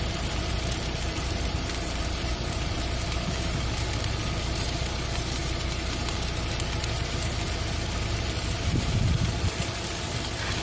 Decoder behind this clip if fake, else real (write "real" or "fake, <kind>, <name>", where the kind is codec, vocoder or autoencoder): fake, vocoder, BigVGAN v2